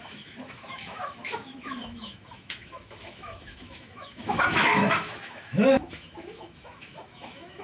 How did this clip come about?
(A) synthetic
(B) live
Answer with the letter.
A